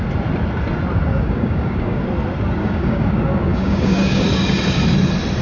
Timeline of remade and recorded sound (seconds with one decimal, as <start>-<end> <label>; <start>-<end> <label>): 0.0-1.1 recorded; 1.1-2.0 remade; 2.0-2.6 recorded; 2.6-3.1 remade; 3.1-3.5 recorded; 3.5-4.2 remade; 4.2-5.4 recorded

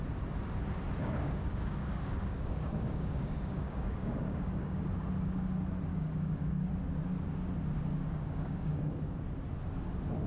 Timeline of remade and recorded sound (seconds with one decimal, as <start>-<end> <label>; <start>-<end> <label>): 0.0-1.0 recorded; 1.0-4.8 remade; 4.8-5.9 recorded; 5.9-6.7 remade; 6.7-7.9 recorded; 7.9-8.8 remade; 8.8-10.3 recorded

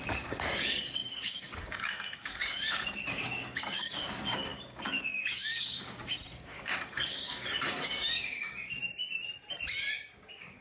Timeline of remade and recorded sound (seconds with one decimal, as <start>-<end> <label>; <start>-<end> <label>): 0.0-8.8 remade; 8.8-9.9 recorded; 9.9-10.6 remade

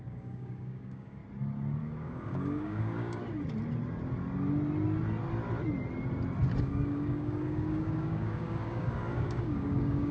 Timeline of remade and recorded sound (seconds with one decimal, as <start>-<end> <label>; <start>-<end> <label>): 0.0-1.2 remade; 1.2-1.8 recorded; 1.8-3.2 remade; 3.2-6.6 recorded; 6.6-10.1 remade